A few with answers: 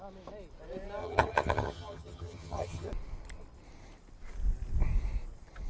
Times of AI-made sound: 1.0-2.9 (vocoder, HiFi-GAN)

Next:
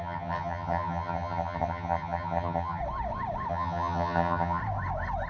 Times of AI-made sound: 0.0-2.8 (vocoder, HiFi-GAN); 3.5-4.6

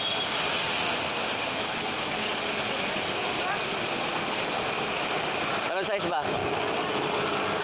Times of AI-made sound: none

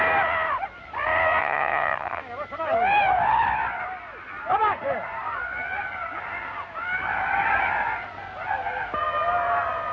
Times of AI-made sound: 1.4-2.2 (vocoder, HiFi-GAN)

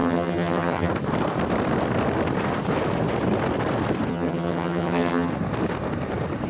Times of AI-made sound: 0.0-0.9 (vocoder, HiFi-GAN); 4.1-5.3

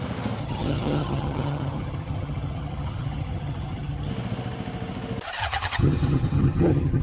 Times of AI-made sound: 0.4-4.1 (vocoder, HiFi-GAN); 5.4-7.0

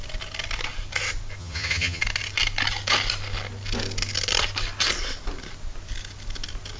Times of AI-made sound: 1.4-2.0 (vocoder, HiFi-GAN)

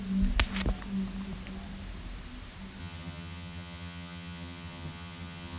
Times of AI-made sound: 2.8-5.6 (vocoder, HiFi-GAN)